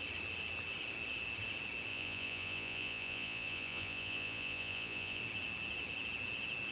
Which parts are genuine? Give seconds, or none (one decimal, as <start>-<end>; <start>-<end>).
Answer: 0.0-1.9; 5.2-6.7